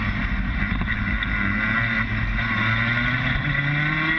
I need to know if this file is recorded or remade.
recorded